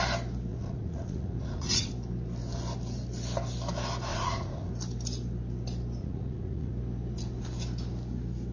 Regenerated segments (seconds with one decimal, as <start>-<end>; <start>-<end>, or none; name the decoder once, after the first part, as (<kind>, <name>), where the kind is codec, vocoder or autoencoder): 0.5-1.9 (vocoder, Vocos); 4.1-4.7; 6.0-6.7